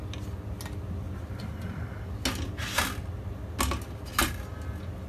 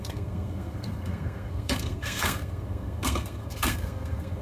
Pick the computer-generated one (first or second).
second